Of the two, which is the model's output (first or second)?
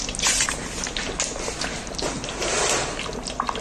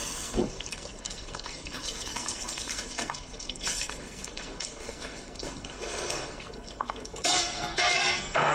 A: second